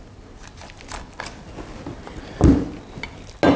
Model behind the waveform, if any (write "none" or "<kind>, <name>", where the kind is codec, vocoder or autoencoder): none